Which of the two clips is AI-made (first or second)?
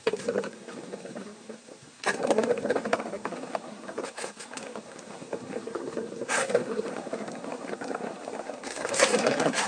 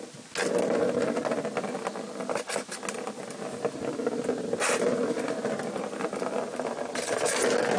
first